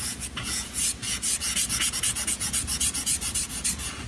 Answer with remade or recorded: remade